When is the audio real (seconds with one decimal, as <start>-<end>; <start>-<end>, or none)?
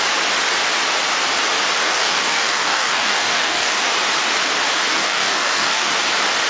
0.0-1.8; 3.9-4.9; 5.9-6.5